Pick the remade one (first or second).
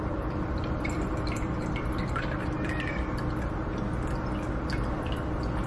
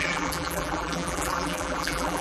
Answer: second